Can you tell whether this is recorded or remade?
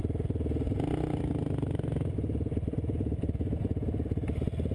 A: recorded